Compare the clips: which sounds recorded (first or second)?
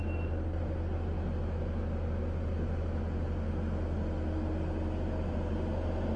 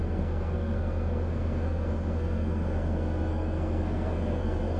first